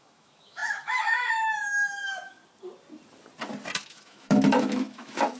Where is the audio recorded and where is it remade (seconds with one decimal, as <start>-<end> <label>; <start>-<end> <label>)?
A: 0.0-2.4 remade; 2.4-3.8 recorded; 3.8-5.4 remade